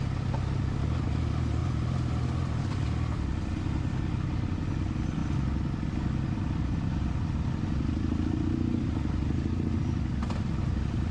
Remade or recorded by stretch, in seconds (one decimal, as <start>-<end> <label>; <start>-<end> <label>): 0.0-11.1 recorded

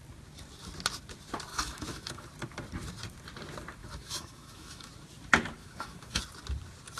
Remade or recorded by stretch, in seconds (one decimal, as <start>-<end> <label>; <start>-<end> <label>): 0.0-1.5 recorded; 1.5-2.3 remade; 2.3-3.8 recorded; 3.8-4.9 remade; 4.9-5.6 recorded; 5.6-6.2 remade; 6.2-7.0 recorded

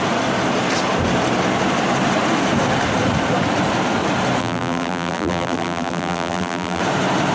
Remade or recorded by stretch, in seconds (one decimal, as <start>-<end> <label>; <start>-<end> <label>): 0.0-4.4 recorded; 4.4-6.8 remade; 6.8-7.3 recorded

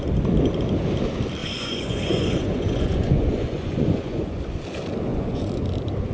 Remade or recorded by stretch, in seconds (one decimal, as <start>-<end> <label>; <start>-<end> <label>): 0.0-1.4 recorded; 1.4-4.4 remade; 4.4-5.1 recorded; 5.1-5.6 remade; 5.6-6.1 recorded

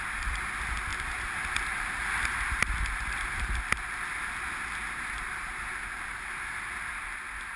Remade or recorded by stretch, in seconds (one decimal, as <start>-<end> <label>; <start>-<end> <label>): 0.0-7.6 recorded

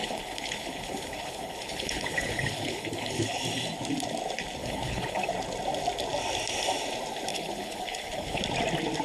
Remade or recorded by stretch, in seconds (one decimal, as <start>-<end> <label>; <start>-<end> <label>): 0.0-3.4 remade; 3.4-4.6 recorded; 4.6-5.3 remade; 5.3-7.3 recorded; 7.3-8.4 remade; 8.4-9.0 recorded

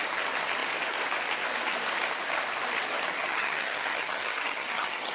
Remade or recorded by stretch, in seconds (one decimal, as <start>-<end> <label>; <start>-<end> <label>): 0.0-3.2 recorded; 3.2-5.1 remade